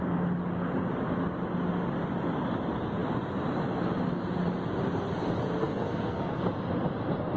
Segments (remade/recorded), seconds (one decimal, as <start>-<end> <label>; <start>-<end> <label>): 0.0-5.6 recorded; 5.6-6.4 remade; 6.4-7.4 recorded